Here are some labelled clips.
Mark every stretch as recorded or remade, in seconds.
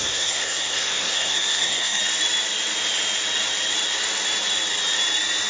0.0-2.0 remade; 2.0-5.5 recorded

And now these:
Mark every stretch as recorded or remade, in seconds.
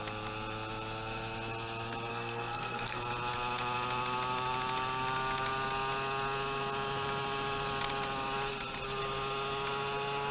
0.0-2.1 recorded; 2.1-3.0 remade; 3.0-10.3 recorded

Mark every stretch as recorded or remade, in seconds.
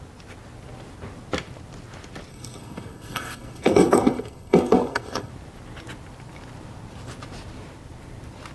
0.0-2.3 recorded; 2.3-5.3 remade; 5.3-8.5 recorded